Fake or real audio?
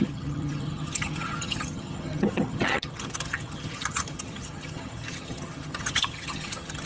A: fake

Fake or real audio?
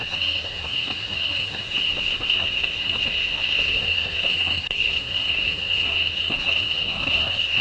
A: fake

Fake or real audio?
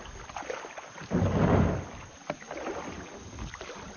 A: real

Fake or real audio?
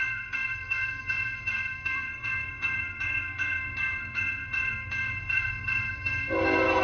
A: fake